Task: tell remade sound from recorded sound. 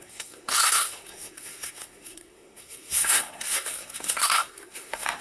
remade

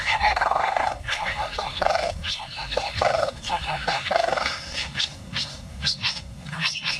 remade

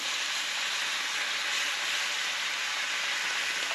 recorded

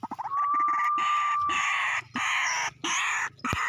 recorded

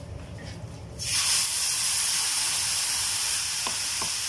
recorded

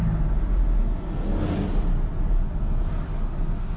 recorded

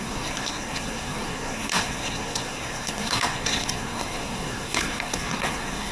remade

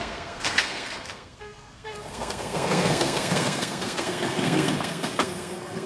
remade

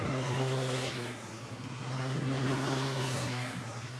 remade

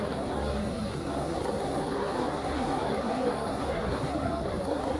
remade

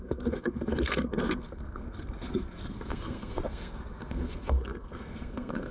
remade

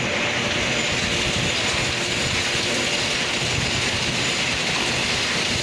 recorded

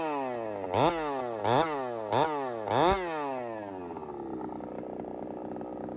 recorded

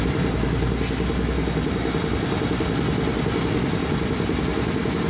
recorded